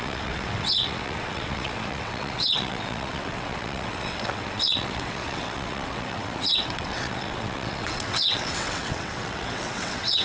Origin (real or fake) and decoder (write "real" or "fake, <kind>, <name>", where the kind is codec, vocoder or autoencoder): fake, vocoder, WaveNeXt